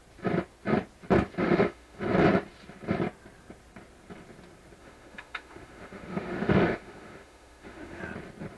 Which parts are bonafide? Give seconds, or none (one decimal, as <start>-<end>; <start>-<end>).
0.0-1.4; 2.0-4.8; 8.0-8.6